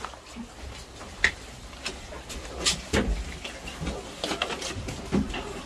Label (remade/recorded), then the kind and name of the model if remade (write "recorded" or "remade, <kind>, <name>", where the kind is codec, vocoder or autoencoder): recorded